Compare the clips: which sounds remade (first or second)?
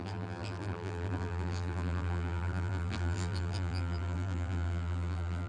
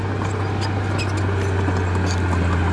first